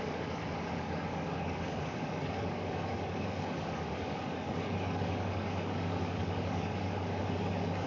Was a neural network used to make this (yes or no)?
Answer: yes